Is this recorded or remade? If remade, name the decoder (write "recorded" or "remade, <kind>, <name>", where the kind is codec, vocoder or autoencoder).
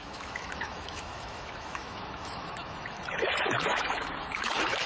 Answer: remade, autoencoder, DAC-VAE